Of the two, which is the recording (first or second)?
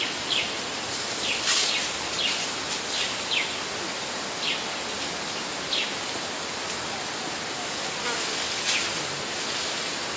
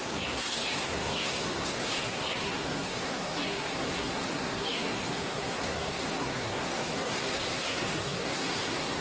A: first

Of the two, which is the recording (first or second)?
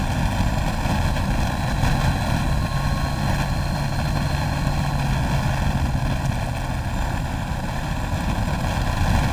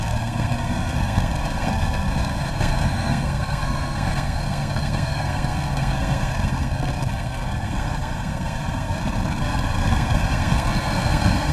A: first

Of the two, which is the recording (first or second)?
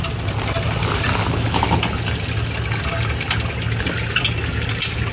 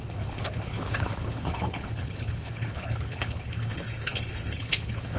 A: first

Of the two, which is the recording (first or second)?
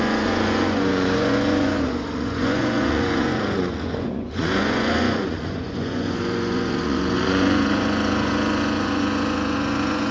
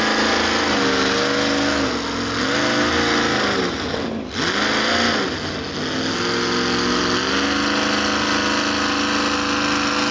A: second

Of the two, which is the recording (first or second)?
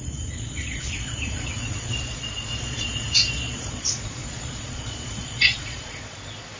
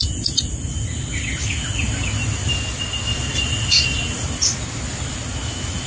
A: second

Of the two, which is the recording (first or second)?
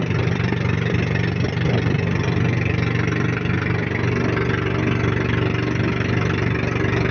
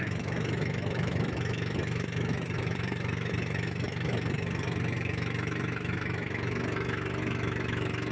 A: first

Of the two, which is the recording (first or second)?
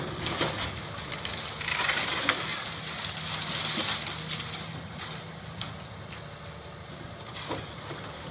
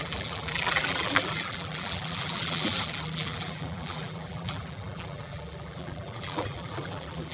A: first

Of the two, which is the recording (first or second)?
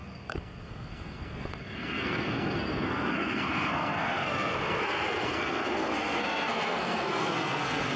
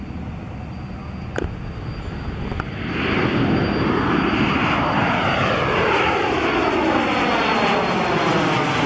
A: second